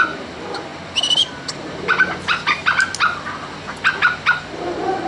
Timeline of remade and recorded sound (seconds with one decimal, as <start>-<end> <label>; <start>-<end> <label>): 0.0-0.7 remade; 0.7-1.5 recorded; 1.5-2.6 remade; 2.6-3.4 recorded; 3.4-5.1 remade